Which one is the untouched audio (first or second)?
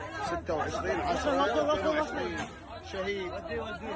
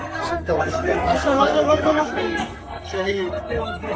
first